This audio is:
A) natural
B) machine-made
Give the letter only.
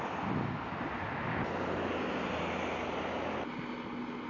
A